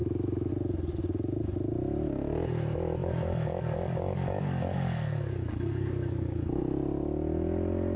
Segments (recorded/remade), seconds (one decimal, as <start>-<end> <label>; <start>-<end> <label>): 0.0-3.0 recorded; 3.0-6.6 remade; 6.6-8.0 recorded